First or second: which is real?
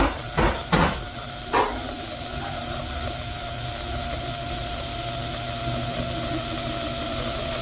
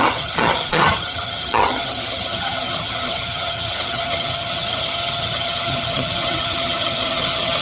first